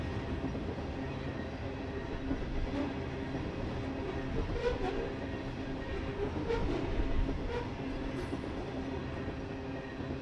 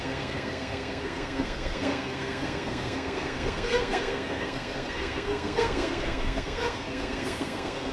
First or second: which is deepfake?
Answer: second